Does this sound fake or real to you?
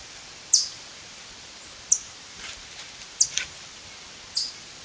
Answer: real